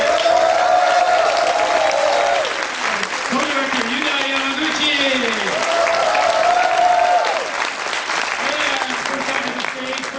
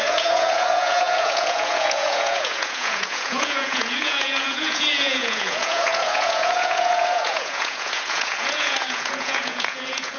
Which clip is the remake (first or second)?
second